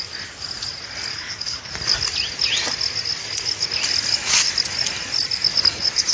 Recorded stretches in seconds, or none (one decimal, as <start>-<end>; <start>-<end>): 0.0-1.1; 1.7-6.1